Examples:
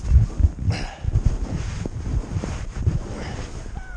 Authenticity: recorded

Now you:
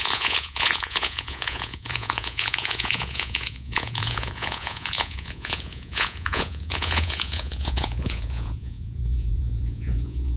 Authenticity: remade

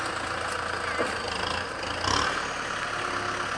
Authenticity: recorded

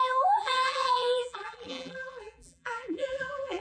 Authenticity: remade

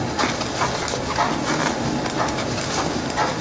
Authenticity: recorded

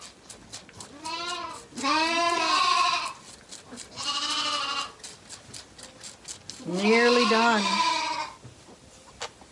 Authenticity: recorded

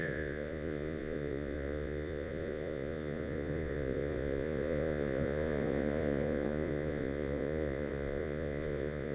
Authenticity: remade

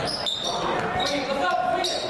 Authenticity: recorded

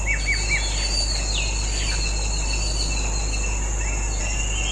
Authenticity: recorded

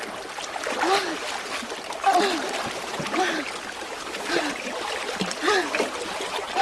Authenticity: recorded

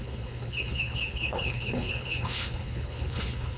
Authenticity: remade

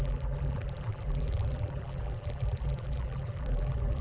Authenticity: remade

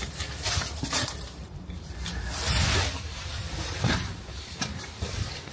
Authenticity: remade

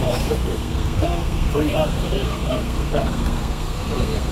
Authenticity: remade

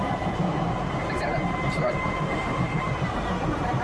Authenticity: remade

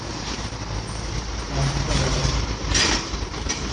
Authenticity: remade